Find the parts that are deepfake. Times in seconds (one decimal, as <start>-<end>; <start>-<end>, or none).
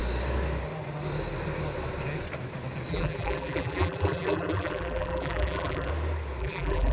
2.9-5.9; 6.4-6.9